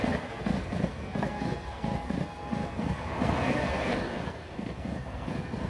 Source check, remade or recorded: remade